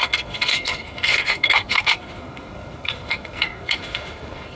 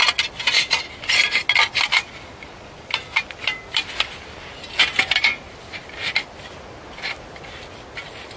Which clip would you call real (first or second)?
second